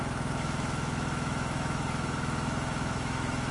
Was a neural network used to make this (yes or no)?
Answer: yes